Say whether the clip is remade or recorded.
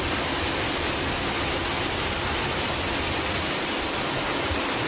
recorded